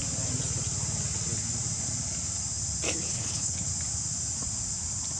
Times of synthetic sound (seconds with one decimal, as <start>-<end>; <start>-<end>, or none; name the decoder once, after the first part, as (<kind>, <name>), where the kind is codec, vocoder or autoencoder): 3.1-3.7 (codec, HILCodec)